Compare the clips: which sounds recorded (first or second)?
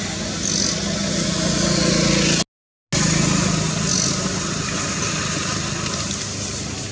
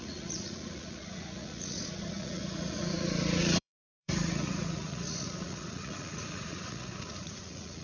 first